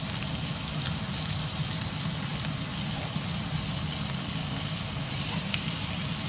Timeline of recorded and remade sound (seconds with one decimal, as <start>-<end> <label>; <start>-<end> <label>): 0.0-4.4 recorded; 4.4-5.1 remade; 5.1-6.3 recorded